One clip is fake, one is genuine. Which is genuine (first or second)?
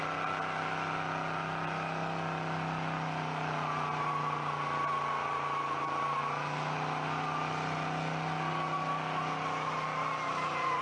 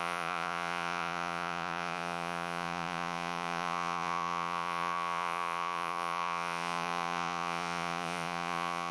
first